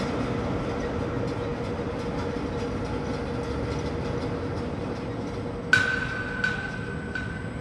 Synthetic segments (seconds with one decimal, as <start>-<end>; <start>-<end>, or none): none